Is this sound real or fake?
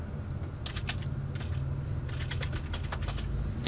real